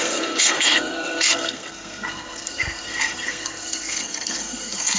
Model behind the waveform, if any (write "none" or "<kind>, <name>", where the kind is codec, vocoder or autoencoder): codec, SNAC